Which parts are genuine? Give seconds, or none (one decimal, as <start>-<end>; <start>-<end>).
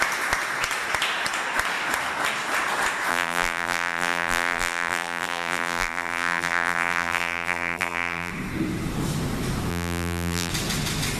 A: 0.0-3.1; 8.3-9.7; 10.5-11.2